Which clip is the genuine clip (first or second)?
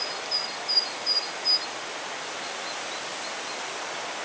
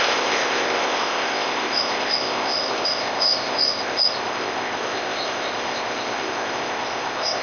first